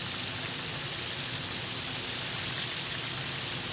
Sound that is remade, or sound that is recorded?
recorded